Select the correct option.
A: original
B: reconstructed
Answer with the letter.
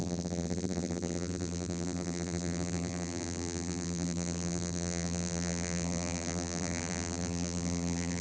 B